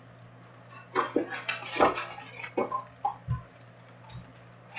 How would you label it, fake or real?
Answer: real